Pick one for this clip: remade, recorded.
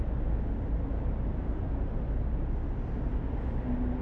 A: recorded